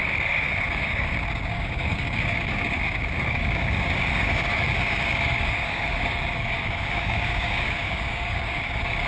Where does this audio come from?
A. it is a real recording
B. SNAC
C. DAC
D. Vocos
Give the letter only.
C